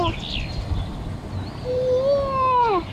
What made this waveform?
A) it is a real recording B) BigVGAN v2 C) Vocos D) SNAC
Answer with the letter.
A